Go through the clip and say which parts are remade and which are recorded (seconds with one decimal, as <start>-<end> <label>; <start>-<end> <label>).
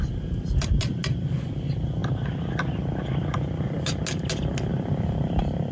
0.0-5.7 recorded